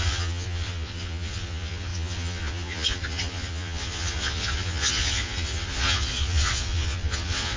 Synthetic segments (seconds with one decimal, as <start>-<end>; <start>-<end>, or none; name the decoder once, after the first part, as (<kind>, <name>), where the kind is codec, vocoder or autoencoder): 0.0-7.6 (vocoder, Vocos)